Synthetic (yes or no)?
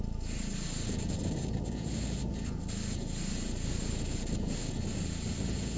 no